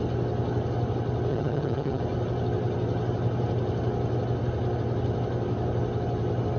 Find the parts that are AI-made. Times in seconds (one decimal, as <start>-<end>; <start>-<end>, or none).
1.3-2.0